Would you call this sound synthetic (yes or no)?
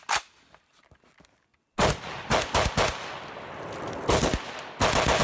no